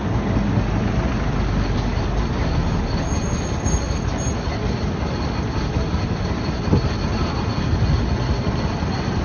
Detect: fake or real real